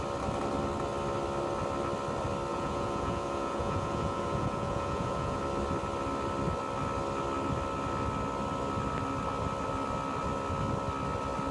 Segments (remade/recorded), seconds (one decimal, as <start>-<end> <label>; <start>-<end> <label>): 0.0-2.5 recorded; 2.5-5.4 remade; 5.4-11.5 recorded